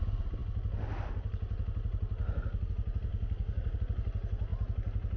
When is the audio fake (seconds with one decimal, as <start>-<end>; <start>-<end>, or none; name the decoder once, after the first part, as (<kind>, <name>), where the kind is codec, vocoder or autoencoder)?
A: 3.1-3.8 (codec, DAC)